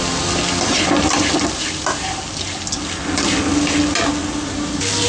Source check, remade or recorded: recorded